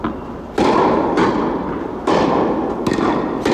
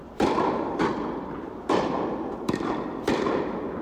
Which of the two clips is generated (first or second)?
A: second